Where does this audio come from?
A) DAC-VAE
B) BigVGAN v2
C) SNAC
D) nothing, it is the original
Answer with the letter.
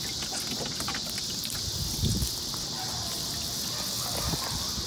D